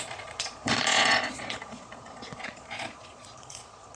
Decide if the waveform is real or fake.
fake